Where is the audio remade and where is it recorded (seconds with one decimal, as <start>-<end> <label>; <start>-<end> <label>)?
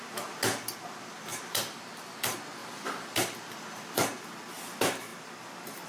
0.0-1.3 recorded; 1.3-1.8 remade; 1.8-2.6 recorded; 2.6-3.9 remade; 3.9-5.9 recorded